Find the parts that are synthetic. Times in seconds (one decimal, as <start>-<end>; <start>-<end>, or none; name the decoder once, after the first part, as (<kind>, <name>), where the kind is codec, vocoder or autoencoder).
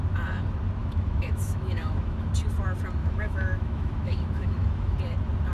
0.8-2.3 (autoencoder, DAC-VAE); 3.0-5.0